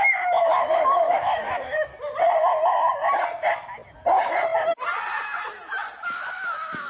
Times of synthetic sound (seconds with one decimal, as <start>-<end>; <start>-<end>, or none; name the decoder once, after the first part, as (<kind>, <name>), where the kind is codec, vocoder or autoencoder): 0.0-1.9 (autoencoder, DAC-VAE); 6.0-6.9